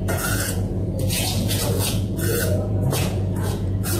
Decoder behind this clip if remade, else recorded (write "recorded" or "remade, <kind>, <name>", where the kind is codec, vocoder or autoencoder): remade, vocoder, Vocos